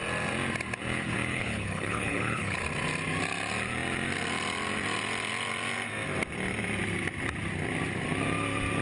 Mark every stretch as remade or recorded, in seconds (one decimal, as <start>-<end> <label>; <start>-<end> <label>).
0.0-1.3 recorded; 1.3-2.6 remade; 2.6-8.8 recorded